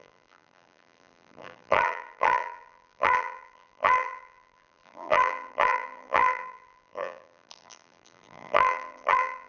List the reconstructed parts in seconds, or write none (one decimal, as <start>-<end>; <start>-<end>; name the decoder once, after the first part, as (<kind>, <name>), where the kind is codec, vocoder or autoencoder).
0.0-9.5 (vocoder, BigVGAN v2)